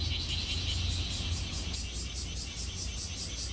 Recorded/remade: recorded